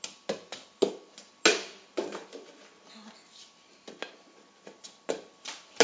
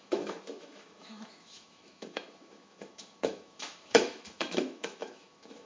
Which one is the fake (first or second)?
second